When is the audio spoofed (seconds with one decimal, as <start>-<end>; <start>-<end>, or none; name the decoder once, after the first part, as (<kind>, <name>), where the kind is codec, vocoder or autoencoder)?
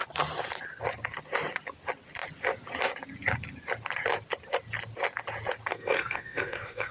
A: 5.7-6.9 (codec, SNAC)